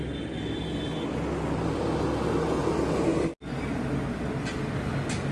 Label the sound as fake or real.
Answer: real